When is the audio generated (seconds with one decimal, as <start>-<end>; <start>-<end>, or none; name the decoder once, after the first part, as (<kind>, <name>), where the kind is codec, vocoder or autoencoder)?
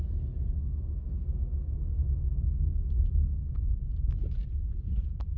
0.6-3.7 (codec, SNAC)